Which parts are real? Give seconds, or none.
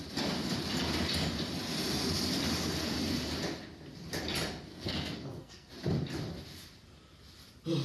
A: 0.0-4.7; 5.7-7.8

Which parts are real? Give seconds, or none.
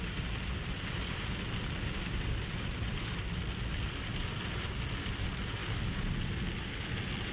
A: 0.0-7.3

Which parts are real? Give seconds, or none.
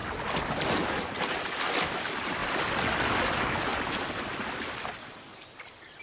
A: 0.0-6.0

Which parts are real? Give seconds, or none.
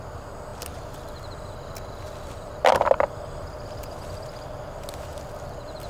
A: 0.0-5.9